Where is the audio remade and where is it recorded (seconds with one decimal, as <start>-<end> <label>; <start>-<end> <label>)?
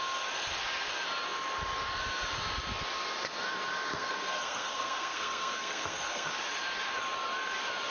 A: 0.0-3.9 recorded; 3.9-6.3 remade; 6.3-7.9 recorded